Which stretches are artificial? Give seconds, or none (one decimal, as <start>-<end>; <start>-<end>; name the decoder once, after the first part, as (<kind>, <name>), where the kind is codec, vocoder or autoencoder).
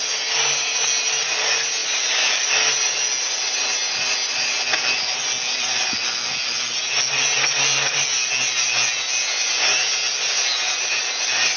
none